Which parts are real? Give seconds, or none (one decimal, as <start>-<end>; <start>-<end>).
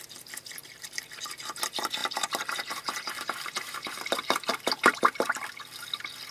0.0-0.6; 1.2-2.0; 5.4-6.3